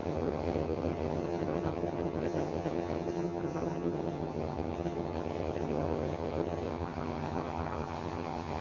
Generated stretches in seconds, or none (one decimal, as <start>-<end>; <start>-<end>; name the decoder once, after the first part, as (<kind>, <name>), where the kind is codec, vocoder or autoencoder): 0.0-8.6 (vocoder, HiFi-GAN)